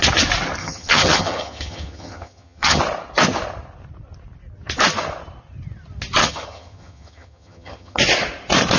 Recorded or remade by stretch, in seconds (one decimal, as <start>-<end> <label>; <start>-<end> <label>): 0.0-0.6 recorded; 0.6-2.8 remade; 2.8-6.2 recorded; 6.2-8.0 remade; 8.0-8.8 recorded